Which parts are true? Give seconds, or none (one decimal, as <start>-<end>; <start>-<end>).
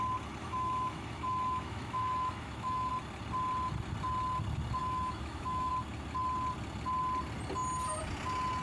0.0-0.4; 2.9-4.8; 5.7-8.6